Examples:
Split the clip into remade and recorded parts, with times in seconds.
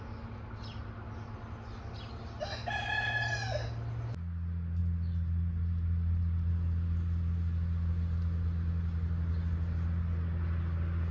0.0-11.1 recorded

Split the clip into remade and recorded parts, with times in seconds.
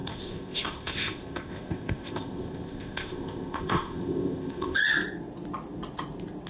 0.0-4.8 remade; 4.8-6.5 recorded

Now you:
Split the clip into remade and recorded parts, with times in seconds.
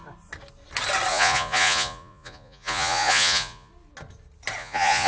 0.0-1.1 recorded; 1.1-3.7 remade; 3.7-4.6 recorded; 4.6-5.1 remade